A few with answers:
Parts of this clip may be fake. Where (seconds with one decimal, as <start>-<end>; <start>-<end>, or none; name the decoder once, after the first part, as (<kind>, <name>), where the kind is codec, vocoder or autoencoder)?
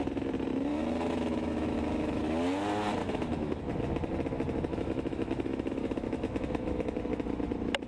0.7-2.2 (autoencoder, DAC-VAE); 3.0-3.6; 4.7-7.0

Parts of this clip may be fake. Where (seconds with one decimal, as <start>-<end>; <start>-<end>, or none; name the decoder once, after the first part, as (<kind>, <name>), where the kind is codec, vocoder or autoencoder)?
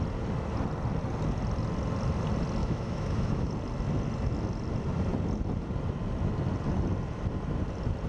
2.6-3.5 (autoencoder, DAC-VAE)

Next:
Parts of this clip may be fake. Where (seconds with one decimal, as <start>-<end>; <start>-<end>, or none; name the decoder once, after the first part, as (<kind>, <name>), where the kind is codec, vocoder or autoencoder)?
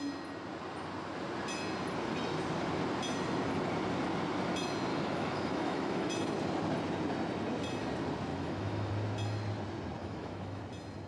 4.9-6.1 (autoencoder, DAC-VAE); 8.3-8.9; 10.0-10.6